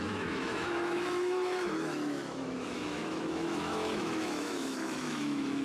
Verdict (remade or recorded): remade